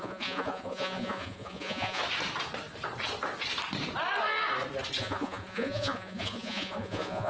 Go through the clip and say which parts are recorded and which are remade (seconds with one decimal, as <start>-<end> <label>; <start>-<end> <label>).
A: 0.0-2.0 remade; 2.0-5.0 recorded; 5.0-7.3 remade